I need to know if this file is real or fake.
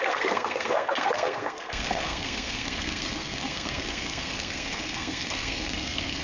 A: fake